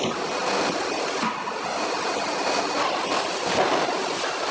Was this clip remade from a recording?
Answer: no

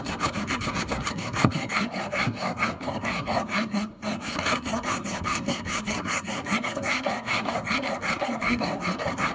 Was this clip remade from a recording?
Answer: yes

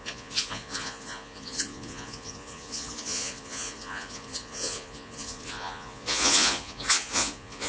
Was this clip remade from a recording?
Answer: yes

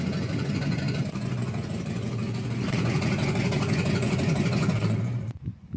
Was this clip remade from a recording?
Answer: yes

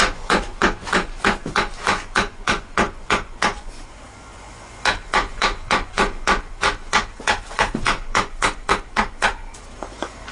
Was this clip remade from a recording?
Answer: yes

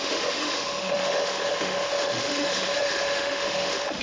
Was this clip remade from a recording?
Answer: yes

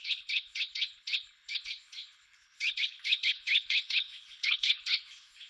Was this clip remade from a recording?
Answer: yes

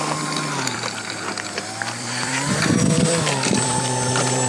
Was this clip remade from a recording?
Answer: yes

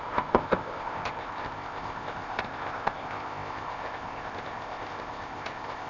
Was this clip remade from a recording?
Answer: yes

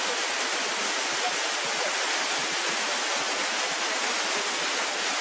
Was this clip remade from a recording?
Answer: no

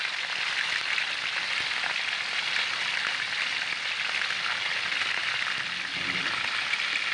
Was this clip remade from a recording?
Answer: no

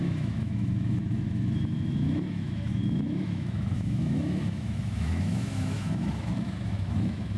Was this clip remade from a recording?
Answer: yes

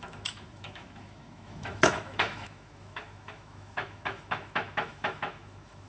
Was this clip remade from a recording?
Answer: yes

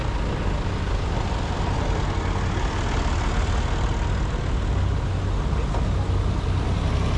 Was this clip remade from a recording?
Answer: no